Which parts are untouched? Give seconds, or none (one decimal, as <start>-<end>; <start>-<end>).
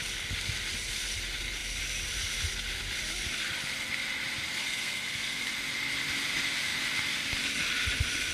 0.0-4.6; 5.5-8.3